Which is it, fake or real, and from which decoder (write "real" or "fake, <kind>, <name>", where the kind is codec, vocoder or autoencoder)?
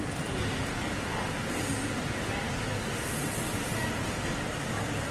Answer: real